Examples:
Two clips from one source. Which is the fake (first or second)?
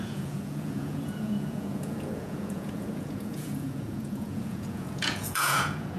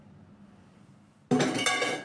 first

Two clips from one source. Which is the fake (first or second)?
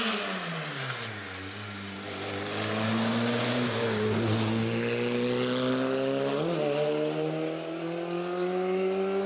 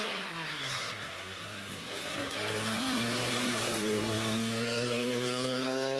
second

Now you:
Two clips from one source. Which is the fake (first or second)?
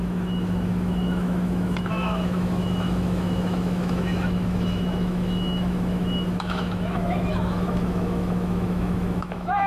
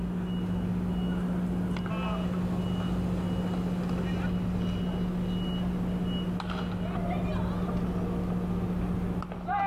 first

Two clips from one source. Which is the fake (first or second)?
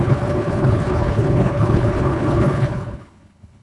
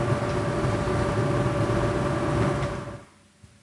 first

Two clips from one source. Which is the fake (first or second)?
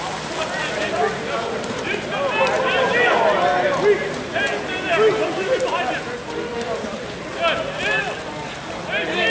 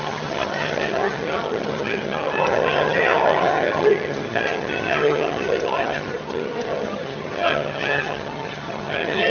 second